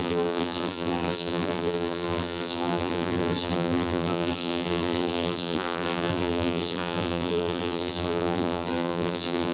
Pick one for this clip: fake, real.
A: fake